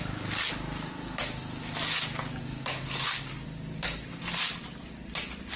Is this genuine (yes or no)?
yes